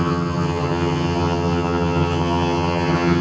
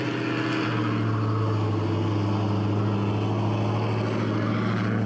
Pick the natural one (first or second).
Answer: second